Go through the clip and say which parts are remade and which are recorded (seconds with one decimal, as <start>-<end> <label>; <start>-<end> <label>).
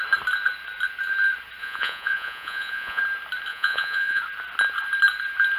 0.0-1.6 recorded; 1.6-3.0 remade; 3.0-3.5 recorded; 3.5-4.2 remade; 4.2-5.6 recorded